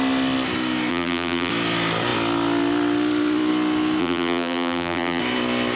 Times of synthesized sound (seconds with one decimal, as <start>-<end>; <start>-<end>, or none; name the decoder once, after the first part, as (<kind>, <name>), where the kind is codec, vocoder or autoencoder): 0.9-1.5 (vocoder, BigVGAN v2); 4.0-5.2